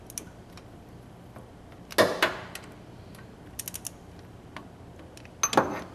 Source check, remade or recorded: recorded